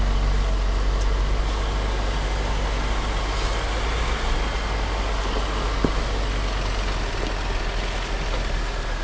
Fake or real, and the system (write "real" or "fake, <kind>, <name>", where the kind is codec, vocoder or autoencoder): real